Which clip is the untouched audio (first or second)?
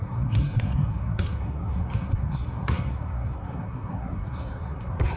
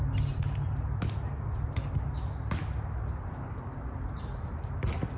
second